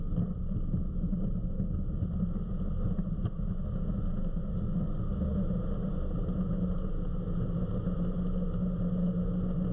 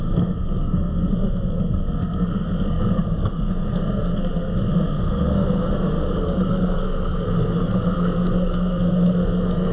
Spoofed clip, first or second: second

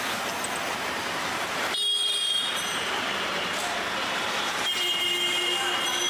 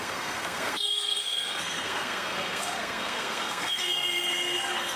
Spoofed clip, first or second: second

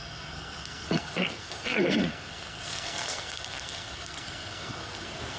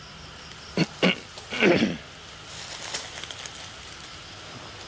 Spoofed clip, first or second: first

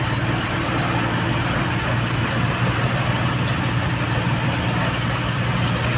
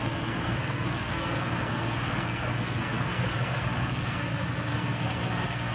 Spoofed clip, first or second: second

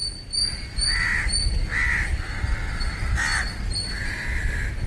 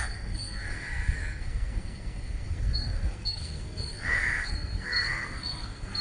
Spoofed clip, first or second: second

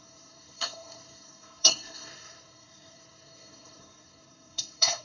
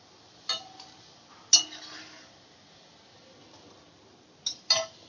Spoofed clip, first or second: first